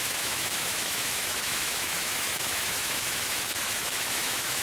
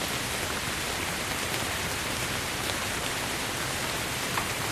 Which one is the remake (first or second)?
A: first